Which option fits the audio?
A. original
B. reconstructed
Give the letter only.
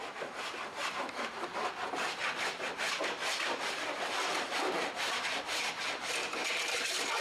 B